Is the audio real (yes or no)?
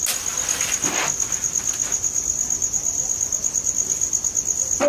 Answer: yes